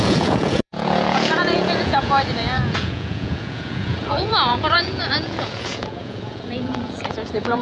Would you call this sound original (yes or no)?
no